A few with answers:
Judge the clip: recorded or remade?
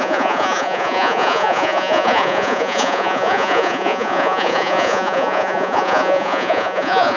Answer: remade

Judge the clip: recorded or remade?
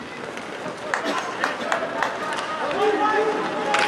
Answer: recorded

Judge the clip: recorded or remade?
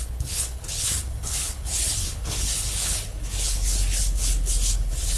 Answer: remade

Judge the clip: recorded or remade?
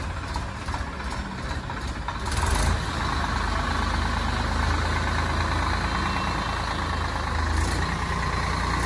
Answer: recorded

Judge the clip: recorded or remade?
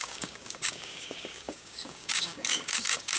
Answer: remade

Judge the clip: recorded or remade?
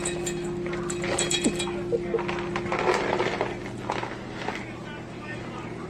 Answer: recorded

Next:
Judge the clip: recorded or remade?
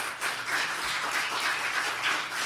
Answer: remade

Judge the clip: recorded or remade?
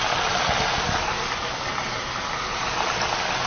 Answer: recorded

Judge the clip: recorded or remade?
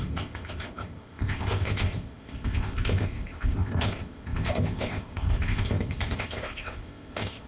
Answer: remade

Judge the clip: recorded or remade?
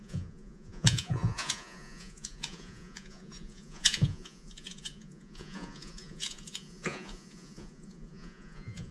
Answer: remade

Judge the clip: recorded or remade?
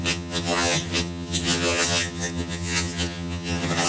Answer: remade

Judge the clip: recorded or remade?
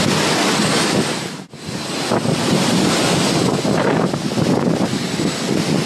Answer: recorded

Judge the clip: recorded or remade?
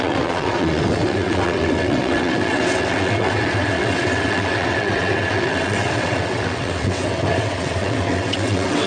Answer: remade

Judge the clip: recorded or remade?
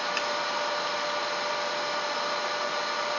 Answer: recorded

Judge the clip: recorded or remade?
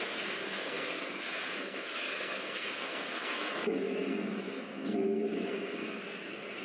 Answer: remade